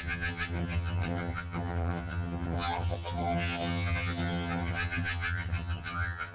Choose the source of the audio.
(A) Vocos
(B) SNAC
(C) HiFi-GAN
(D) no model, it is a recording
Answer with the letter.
C